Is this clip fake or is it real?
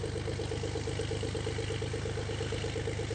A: real